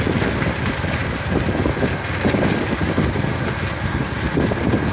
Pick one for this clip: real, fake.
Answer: real